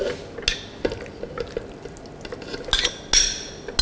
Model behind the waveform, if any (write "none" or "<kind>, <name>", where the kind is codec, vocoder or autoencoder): none